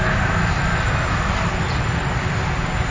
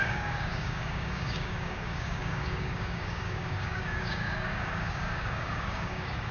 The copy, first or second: second